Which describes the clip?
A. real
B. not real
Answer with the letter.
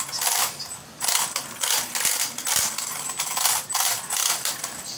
A